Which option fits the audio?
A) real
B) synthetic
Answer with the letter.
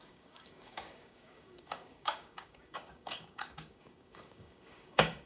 B